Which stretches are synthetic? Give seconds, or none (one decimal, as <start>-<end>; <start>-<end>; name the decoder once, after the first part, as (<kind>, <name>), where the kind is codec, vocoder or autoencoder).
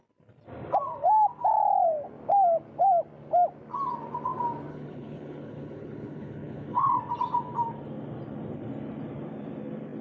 4.7-7.0 (codec, HILCodec)